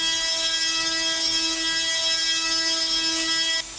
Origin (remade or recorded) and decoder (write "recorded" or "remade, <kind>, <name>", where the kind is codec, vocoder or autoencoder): recorded